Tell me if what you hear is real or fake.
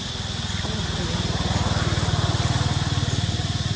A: real